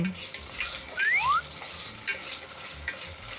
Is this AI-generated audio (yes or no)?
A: no